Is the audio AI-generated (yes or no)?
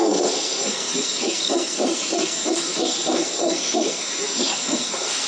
yes